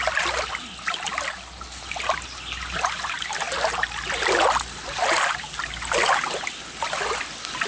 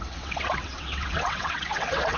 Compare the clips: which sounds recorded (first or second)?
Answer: first